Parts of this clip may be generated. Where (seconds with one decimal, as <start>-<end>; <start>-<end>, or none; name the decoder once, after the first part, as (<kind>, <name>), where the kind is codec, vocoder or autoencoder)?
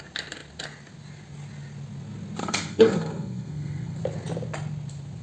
2.4-4.0 (codec, SNAC)